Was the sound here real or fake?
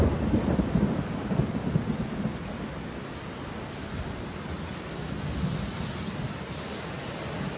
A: real